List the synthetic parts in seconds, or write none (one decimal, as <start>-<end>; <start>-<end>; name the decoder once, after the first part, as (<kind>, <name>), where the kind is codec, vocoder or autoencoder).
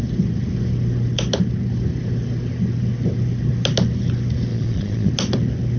4.5-5.1 (vocoder, Vocos)